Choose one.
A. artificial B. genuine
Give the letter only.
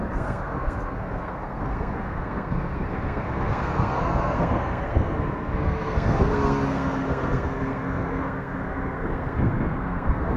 A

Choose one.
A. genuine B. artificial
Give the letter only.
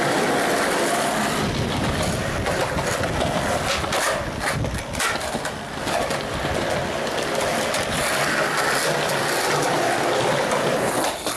A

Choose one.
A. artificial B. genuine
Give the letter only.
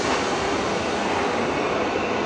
B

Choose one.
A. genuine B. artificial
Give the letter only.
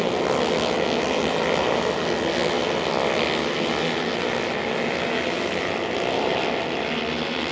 A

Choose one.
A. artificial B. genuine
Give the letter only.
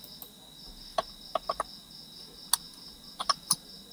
B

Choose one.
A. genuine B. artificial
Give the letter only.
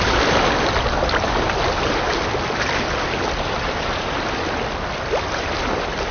A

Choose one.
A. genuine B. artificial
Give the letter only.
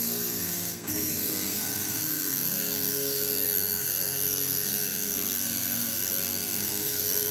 B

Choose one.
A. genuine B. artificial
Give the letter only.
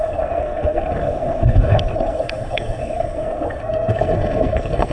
B